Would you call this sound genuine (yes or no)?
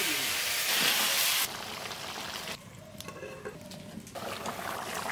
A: yes